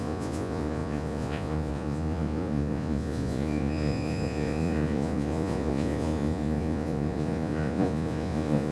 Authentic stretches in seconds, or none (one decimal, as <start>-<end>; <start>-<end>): none